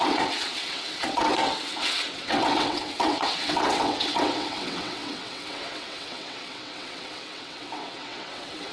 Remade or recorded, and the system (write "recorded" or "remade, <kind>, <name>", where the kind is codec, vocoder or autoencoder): remade, vocoder, WaveNeXt